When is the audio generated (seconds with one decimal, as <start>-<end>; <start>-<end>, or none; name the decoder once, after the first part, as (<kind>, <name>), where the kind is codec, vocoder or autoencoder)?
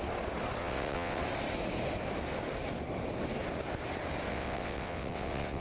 0.6-1.2 (vocoder, WaveNeXt); 4.3-5.6